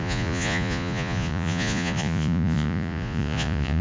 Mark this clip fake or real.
fake